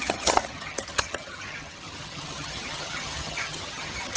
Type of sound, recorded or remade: remade